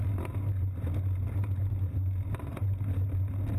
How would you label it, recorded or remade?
recorded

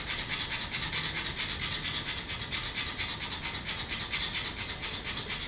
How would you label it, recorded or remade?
recorded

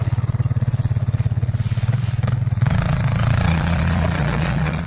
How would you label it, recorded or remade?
remade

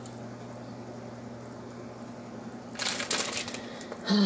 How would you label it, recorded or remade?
recorded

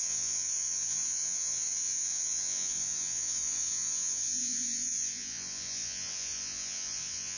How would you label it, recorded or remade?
remade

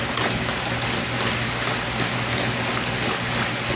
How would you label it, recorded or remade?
recorded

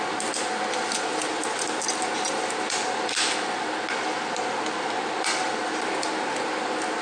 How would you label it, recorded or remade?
recorded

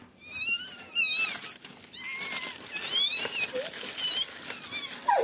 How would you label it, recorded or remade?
recorded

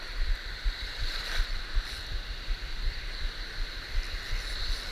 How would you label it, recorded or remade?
recorded